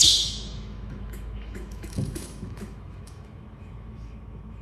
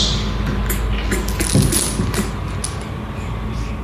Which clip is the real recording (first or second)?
second